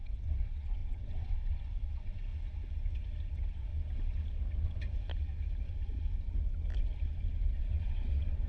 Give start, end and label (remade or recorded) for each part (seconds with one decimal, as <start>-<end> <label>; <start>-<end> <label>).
0.0-2.3 remade; 2.3-3.3 recorded; 3.3-3.7 remade; 3.7-7.6 recorded; 7.6-8.5 remade